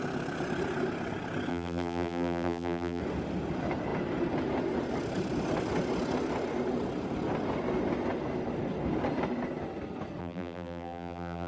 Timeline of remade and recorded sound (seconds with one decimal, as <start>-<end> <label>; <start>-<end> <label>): 0.0-1.5 recorded; 1.5-3.0 remade; 3.0-10.2 recorded; 10.2-11.5 remade